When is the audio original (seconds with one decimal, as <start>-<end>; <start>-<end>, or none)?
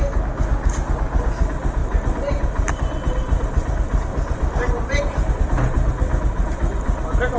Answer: 0.0-1.8; 5.4-7.4